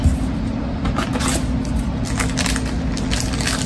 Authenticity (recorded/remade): recorded